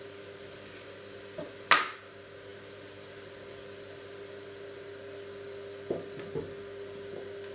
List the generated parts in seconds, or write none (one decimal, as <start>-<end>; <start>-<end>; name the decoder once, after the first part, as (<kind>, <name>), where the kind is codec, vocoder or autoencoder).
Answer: none